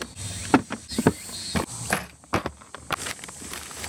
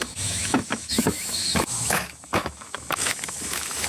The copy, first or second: second